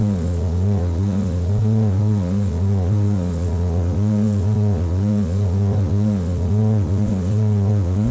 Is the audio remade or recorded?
remade